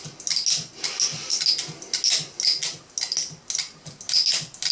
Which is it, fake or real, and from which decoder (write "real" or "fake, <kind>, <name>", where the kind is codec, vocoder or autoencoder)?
real